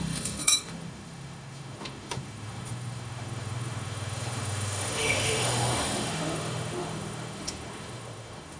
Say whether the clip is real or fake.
fake